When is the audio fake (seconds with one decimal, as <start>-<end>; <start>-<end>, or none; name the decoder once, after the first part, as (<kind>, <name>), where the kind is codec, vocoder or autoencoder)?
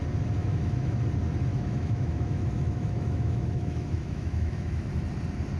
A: 0.4-1.0 (autoencoder, DAC-VAE); 1.5-4.9